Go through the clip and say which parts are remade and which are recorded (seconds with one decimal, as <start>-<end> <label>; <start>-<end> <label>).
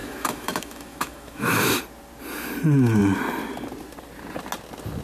0.0-1.8 remade; 1.8-5.0 recorded